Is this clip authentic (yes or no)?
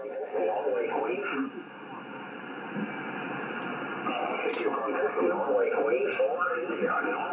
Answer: no